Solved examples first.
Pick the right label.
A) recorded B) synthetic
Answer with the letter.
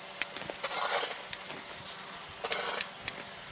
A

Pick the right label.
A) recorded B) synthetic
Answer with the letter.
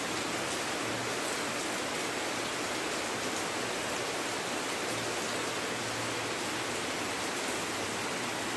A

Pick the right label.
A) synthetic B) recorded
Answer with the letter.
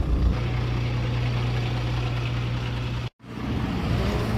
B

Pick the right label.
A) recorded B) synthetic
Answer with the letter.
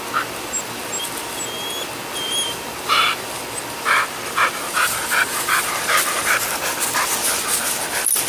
A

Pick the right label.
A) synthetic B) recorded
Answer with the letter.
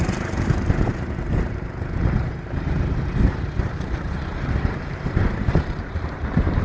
A